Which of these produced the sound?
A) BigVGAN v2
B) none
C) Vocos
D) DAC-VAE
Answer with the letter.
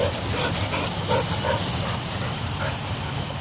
A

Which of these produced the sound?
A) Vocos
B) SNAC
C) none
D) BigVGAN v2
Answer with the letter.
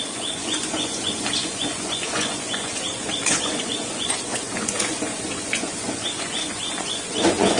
A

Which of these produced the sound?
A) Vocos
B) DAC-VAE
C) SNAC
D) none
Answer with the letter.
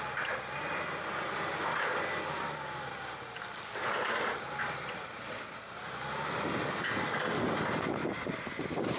D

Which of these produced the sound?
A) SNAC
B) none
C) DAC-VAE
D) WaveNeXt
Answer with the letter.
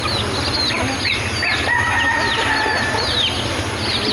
B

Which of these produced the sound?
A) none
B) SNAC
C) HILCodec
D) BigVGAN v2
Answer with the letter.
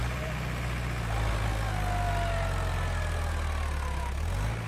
A